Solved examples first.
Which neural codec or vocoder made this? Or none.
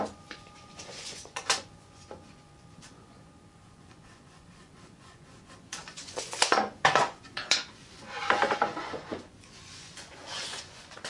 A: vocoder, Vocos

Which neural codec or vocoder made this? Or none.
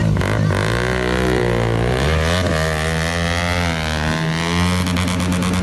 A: none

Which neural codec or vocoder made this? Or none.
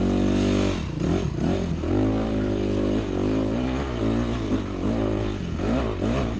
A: none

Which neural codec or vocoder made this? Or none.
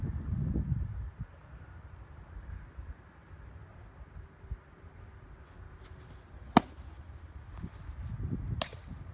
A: none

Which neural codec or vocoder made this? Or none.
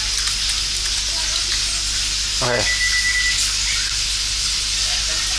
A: none